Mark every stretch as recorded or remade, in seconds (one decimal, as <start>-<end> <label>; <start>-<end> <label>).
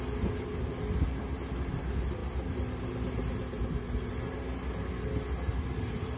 0.0-6.2 recorded